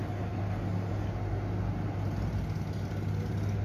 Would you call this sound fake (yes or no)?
no